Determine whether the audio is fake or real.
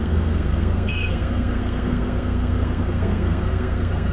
fake